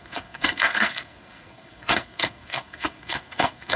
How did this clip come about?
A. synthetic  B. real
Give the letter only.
A